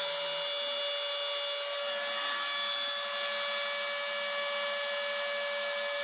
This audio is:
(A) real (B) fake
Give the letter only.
A